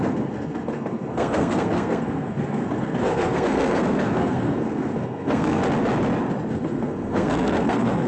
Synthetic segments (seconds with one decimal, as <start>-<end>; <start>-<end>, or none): 0.0-5.6; 6.5-8.1